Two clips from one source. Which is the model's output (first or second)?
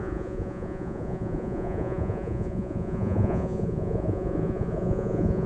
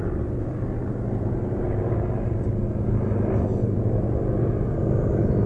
first